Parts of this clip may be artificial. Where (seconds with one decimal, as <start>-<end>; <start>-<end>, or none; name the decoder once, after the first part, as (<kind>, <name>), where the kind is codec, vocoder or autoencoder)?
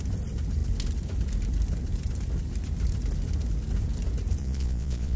4.4-5.2 (vocoder, Vocos)